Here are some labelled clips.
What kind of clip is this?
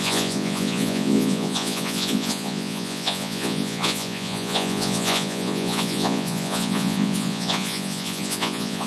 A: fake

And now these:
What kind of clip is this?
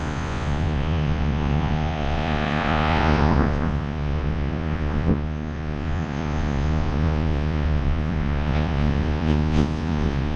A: fake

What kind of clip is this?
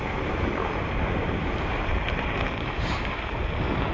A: fake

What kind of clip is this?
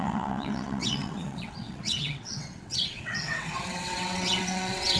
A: fake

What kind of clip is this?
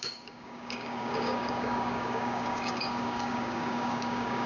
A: fake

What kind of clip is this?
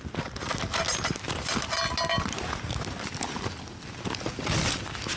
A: real